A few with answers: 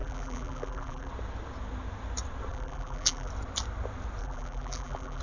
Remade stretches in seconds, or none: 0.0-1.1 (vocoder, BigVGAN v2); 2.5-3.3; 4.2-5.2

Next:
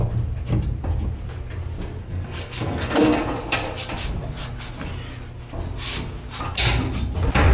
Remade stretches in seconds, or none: 2.0-3.2 (codec, SNAC)

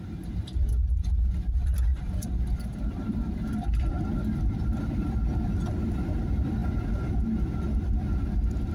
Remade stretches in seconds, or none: 1.9-2.4 (vocoder, BigVGAN v2)

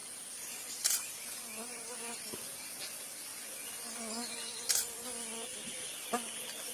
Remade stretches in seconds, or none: none

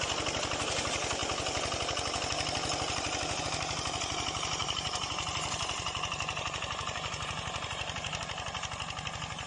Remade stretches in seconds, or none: 4.6-8.2 (vocoder, BigVGAN v2)

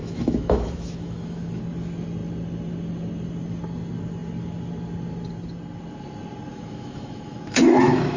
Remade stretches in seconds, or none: 0.0-1.6 (autoencoder, DAC-VAE); 6.5-8.2